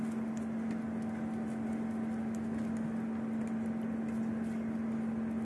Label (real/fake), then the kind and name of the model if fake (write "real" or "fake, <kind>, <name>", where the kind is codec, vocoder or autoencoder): real